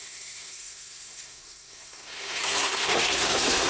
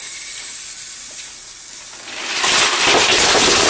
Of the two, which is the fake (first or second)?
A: first